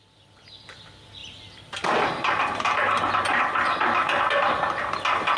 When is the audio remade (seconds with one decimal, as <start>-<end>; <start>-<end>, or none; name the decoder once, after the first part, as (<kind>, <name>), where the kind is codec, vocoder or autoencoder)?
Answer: 1.2-4.2 (vocoder, BigVGAN v2)